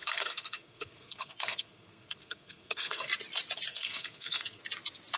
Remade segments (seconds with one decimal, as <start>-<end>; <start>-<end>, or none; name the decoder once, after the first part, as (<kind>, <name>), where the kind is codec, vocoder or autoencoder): 0.0-3.1 (codec, SNAC); 3.7-4.6